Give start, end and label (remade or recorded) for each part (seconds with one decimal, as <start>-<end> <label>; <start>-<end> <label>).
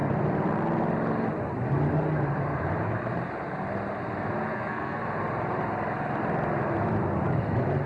0.0-4.5 recorded; 4.5-5.0 remade; 5.0-7.9 recorded